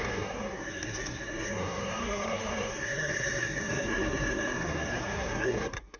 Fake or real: fake